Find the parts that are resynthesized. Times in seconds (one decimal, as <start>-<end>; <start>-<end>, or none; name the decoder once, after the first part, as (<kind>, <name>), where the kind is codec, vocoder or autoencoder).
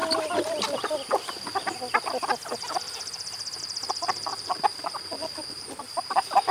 3.6-6.5 (vocoder, BigVGAN v2)